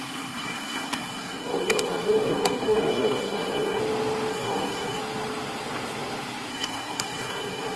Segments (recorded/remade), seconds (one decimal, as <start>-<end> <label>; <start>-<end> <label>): 0.0-3.8 remade; 3.8-4.3 recorded; 4.3-5.0 remade; 5.0-6.5 recorded; 6.5-7.8 remade